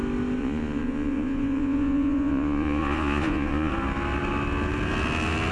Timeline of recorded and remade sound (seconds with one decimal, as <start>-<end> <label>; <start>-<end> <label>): 0.0-0.4 recorded; 0.4-3.7 remade; 3.7-5.5 recorded